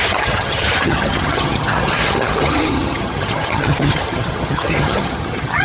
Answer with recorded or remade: remade